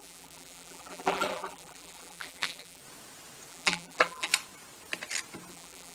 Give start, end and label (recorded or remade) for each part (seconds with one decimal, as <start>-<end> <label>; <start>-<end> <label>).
0.0-2.8 remade; 2.8-3.5 recorded; 3.5-4.3 remade; 4.3-5.5 recorded; 5.5-5.9 remade